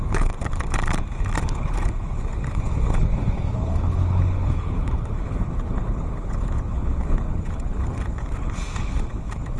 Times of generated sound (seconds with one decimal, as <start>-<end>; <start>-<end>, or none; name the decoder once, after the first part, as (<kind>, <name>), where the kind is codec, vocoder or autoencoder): 0.0-9.6 (codec, HILCodec)